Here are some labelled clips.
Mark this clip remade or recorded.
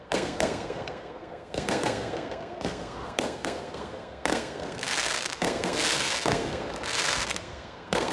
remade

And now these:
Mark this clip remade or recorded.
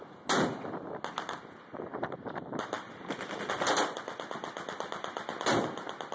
recorded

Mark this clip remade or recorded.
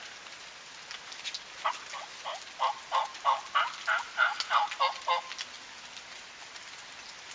recorded